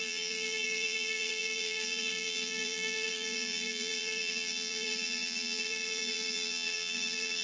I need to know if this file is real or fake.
fake